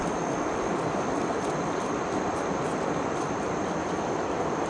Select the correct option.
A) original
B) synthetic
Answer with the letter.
A